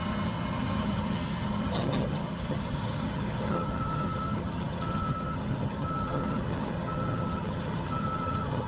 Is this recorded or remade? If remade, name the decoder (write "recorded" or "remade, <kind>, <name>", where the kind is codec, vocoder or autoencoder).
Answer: remade, vocoder, HiFi-GAN